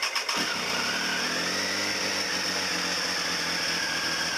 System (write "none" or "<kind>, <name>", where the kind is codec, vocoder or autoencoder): none